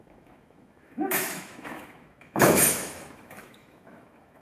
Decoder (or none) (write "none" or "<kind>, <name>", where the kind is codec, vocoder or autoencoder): autoencoder, DAC-VAE